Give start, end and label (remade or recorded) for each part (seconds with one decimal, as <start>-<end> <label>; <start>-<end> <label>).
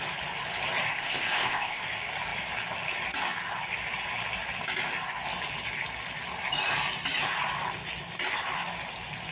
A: 0.0-0.9 recorded; 0.9-1.8 remade; 1.8-9.3 recorded